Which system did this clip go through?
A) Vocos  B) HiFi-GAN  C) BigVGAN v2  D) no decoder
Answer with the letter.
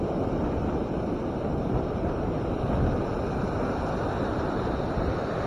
D